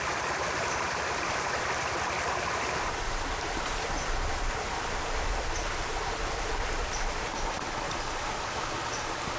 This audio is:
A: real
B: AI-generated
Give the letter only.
A